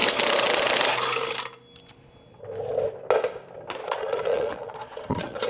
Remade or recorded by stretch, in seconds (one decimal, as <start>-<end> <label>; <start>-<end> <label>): 0.0-3.8 recorded; 3.8-5.5 remade